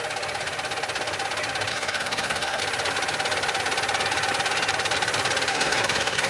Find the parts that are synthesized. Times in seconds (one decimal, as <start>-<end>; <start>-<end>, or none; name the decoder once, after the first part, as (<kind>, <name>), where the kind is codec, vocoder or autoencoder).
1.7-2.6 (codec, SNAC); 5.5-6.3